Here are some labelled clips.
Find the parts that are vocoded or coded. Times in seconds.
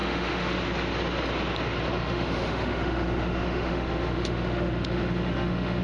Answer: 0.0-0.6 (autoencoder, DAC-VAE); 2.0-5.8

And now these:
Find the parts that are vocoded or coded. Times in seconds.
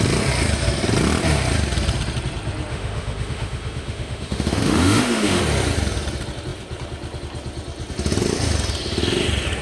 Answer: 2.7-5.4 (autoencoder, DAC-VAE)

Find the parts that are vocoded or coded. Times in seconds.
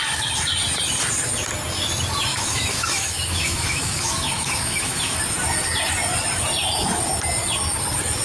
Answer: 2.3-5.2 (autoencoder, DAC-VAE)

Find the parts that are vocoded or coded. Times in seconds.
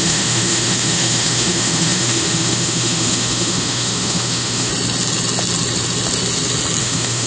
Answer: 0.0-4.7 (autoencoder, DAC-VAE); 6.8-7.3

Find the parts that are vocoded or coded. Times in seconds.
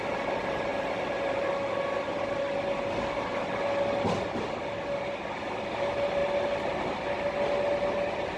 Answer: none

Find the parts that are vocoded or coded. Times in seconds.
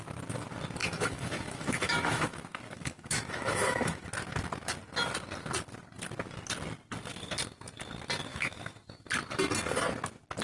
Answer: 0.8-4.1 (autoencoder, DAC-VAE); 8.3-9.1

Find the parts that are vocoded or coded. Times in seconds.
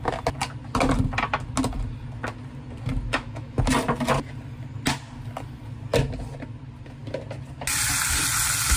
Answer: 3.1-3.6 (autoencoder, DAC-VAE)